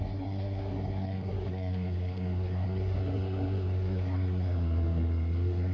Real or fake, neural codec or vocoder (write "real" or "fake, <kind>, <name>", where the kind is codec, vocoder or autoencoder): fake, codec, SNAC